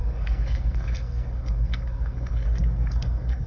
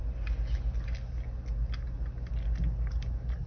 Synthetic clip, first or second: first